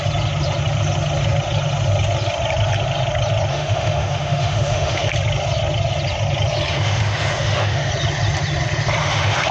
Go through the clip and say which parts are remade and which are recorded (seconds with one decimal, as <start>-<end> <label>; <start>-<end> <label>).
0.0-3.5 recorded; 3.5-5.1 remade; 5.1-6.7 recorded; 6.7-7.9 remade; 7.9-9.0 recorded; 9.0-9.5 remade